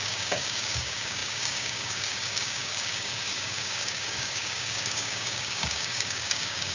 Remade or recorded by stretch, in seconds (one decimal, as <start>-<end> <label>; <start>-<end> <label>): 0.0-6.7 remade